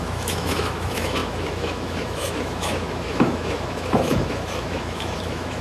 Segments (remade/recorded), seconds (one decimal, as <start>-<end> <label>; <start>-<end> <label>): 0.0-5.6 remade